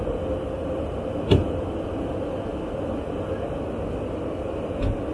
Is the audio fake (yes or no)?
no